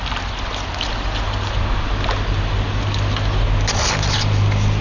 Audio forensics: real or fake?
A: real